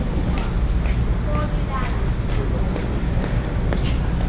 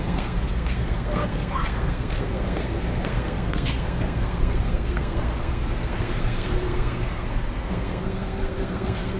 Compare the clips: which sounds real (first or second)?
first